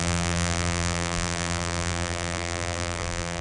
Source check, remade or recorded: remade